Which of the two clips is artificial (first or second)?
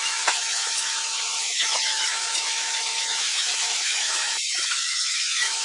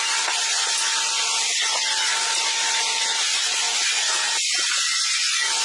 first